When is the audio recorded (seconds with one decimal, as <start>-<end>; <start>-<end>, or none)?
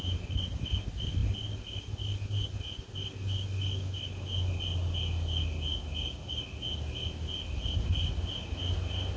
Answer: 0.0-9.2